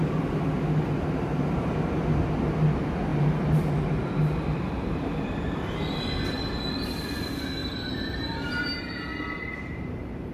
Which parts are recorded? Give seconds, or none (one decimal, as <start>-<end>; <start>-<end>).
0.0-3.1; 5.7-7.6